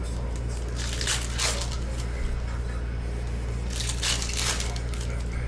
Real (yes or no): yes